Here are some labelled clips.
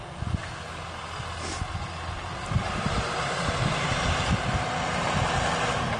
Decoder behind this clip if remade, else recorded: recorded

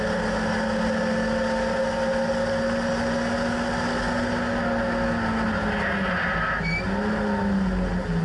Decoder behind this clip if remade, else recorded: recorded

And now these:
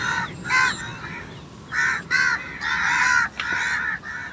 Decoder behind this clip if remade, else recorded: recorded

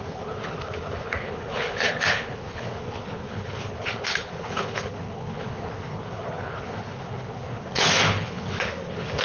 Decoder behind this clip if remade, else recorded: remade, codec, HILCodec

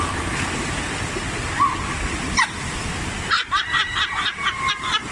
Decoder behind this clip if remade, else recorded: recorded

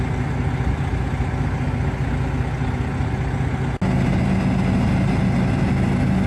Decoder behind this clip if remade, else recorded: recorded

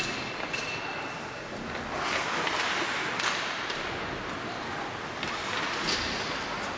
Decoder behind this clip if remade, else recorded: recorded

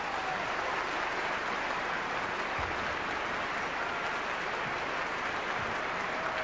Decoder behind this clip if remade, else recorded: recorded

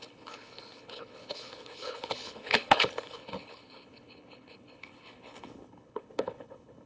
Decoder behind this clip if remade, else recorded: remade, codec, HILCodec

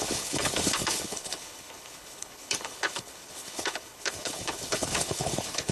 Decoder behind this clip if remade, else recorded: remade, codec, HILCodec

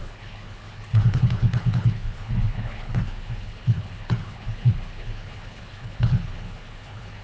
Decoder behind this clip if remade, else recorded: remade, codec, HILCodec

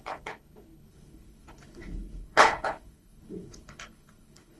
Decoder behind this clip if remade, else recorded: remade, codec, HILCodec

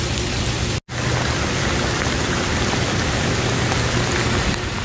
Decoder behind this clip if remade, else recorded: recorded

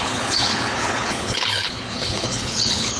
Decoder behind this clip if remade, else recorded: remade, codec, HILCodec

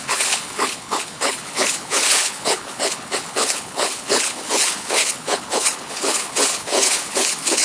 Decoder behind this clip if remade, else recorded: remade, codec, HILCodec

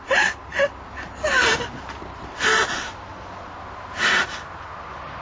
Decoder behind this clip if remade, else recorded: recorded